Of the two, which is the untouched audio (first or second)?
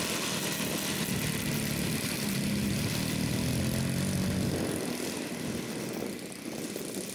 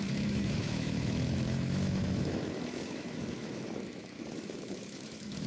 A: first